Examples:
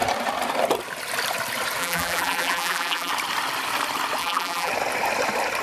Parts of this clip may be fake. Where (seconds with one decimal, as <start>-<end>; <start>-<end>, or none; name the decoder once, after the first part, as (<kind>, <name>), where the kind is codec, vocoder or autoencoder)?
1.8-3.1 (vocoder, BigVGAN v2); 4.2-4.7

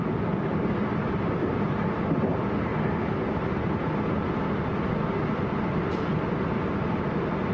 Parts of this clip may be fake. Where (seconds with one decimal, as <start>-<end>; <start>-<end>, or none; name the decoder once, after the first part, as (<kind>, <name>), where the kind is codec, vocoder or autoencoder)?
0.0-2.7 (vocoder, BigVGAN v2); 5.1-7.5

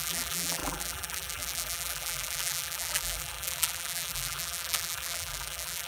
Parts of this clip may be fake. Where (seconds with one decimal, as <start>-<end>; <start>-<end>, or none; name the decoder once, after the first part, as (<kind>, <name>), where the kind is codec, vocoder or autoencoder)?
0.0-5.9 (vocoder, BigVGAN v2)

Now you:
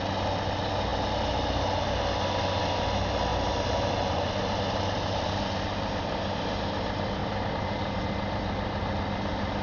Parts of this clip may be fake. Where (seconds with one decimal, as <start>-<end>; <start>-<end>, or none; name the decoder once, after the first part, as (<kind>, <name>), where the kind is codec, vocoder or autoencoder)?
3.3-6.6 (vocoder, BigVGAN v2); 7.2-8.0